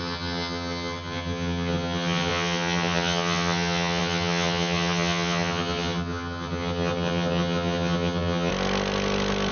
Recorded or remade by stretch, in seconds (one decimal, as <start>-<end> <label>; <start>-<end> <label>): 0.0-8.5 remade; 8.5-9.5 recorded

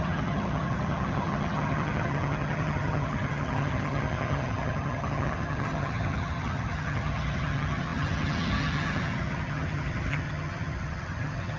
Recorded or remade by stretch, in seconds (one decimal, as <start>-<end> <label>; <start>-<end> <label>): 0.0-11.6 remade

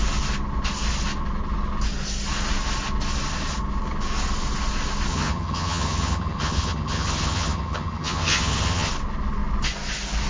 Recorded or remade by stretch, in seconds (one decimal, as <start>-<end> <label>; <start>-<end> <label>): 0.0-5.1 recorded; 5.1-8.9 remade; 8.9-10.3 recorded

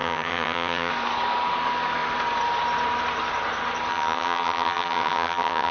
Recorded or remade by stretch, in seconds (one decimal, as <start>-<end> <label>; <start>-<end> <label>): 0.0-0.9 remade; 0.9-3.9 recorded; 3.9-5.7 remade